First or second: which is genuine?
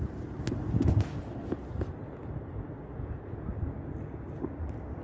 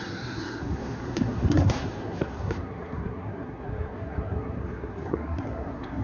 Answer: first